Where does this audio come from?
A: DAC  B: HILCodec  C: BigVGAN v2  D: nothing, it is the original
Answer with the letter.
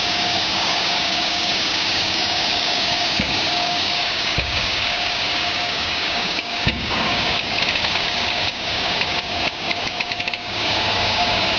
A